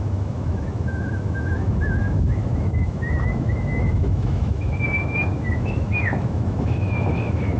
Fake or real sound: fake